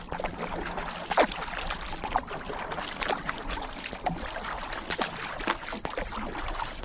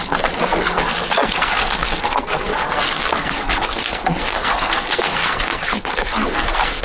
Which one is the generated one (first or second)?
second